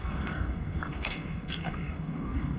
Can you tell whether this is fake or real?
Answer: fake